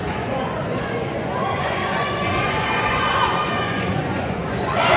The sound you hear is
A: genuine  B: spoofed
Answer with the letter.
B